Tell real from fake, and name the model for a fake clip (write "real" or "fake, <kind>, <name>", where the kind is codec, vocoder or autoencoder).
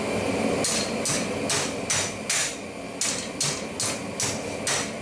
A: real